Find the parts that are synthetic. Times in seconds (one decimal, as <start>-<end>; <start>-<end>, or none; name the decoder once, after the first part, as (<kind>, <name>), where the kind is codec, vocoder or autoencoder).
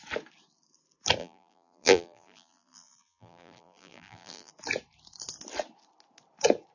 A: 1.2-4.5 (vocoder, BigVGAN v2)